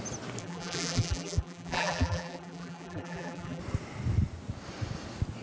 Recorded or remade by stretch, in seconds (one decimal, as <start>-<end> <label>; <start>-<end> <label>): 0.0-0.4 recorded; 0.4-3.6 remade; 3.6-5.4 recorded